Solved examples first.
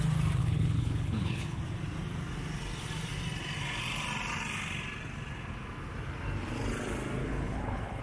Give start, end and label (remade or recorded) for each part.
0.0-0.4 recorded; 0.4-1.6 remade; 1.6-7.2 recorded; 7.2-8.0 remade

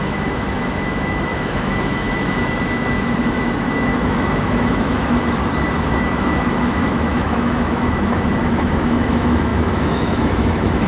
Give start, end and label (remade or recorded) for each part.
0.0-5.4 remade; 5.4-5.9 recorded; 5.9-10.9 remade

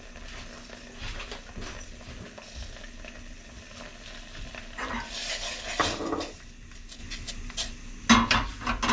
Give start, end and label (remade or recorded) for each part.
0.0-8.9 recorded

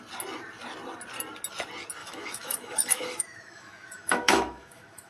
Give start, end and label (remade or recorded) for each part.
0.0-2.0 recorded; 2.0-5.1 remade

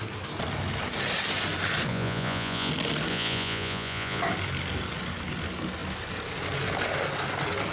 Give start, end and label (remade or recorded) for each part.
0.0-1.9 recorded; 1.9-2.7 remade; 2.7-3.1 recorded; 3.1-4.2 remade; 4.2-7.7 recorded

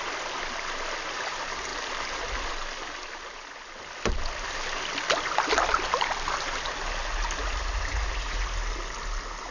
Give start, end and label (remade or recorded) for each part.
0.0-9.5 recorded